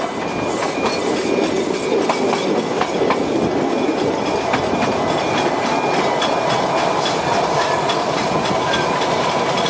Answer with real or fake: real